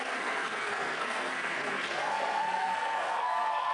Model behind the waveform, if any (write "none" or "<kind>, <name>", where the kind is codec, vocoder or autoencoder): codec, SNAC